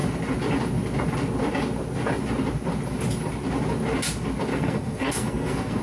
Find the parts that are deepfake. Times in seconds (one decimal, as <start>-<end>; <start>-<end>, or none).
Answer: 4.5-5.8